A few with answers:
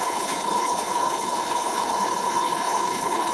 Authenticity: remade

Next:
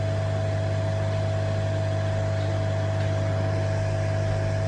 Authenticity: recorded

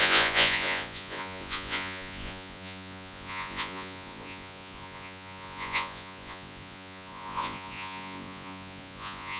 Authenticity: remade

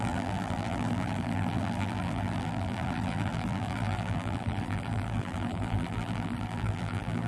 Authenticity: remade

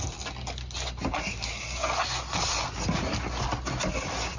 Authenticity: recorded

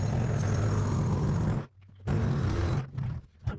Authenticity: recorded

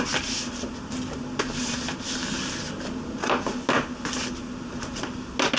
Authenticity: recorded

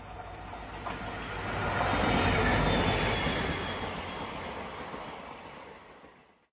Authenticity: recorded